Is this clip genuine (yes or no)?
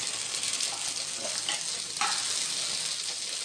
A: yes